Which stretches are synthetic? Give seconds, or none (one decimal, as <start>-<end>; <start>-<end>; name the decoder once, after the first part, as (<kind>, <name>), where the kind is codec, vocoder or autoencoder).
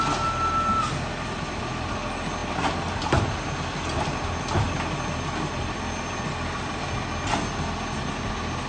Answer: none